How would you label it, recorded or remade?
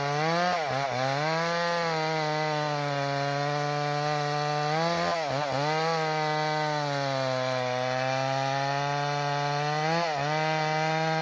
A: recorded